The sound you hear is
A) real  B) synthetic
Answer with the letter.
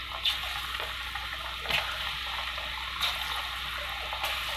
A